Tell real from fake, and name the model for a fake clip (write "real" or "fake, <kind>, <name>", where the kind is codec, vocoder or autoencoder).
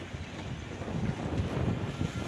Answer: real